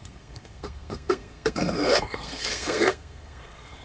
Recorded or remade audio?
remade